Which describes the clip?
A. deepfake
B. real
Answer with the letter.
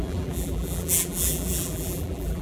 A